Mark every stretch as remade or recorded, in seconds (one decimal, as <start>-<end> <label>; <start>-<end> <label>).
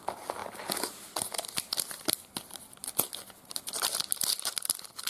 0.0-5.1 recorded